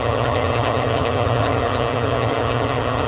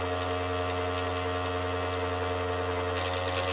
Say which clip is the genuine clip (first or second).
second